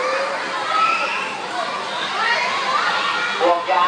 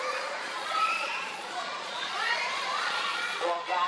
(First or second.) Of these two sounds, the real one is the first